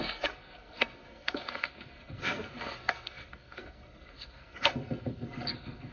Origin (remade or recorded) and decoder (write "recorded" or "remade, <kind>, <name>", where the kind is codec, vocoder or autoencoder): remade, codec, SNAC